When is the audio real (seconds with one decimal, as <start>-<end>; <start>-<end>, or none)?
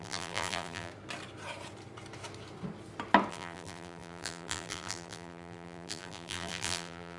0.9-3.3